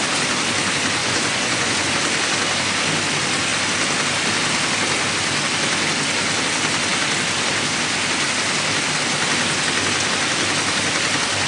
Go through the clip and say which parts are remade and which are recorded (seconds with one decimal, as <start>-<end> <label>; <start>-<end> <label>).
0.0-1.0 recorded; 1.0-1.9 remade; 1.9-11.5 recorded